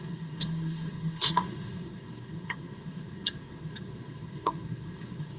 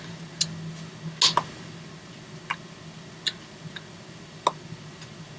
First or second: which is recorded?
second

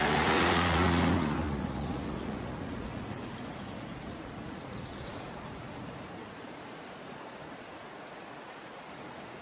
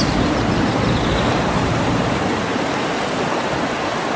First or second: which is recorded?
second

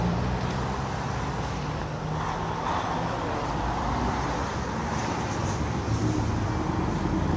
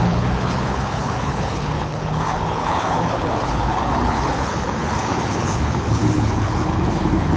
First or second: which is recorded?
first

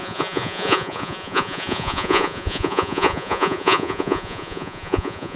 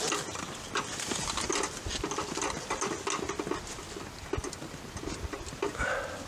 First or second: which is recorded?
second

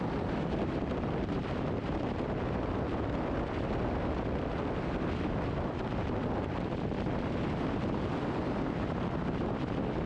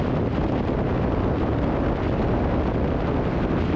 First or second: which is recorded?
second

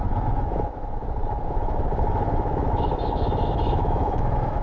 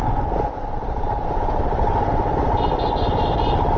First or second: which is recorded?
second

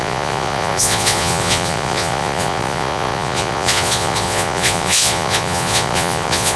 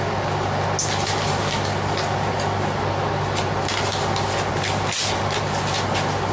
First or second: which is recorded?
second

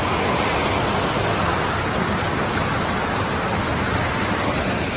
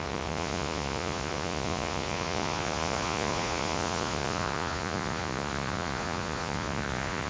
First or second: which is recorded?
first